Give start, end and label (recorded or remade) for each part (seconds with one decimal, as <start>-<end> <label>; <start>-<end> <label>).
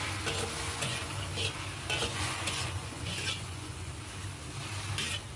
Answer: 0.0-0.6 recorded; 0.6-1.1 remade; 1.1-2.0 recorded; 2.0-3.9 remade; 3.9-5.4 recorded